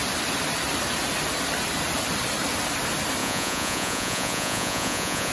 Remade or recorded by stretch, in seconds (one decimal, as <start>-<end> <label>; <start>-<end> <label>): 0.0-3.2 recorded; 3.2-5.3 remade